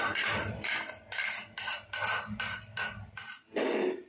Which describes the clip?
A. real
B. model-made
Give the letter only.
A